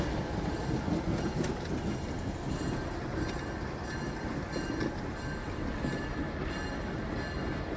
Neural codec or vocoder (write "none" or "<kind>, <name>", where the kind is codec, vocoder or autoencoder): none